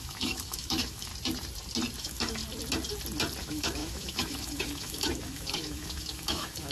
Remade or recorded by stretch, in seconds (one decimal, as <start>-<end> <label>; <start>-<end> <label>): 0.0-1.1 remade; 1.1-2.0 recorded; 2.0-2.4 remade; 2.4-3.4 recorded; 3.4-6.7 remade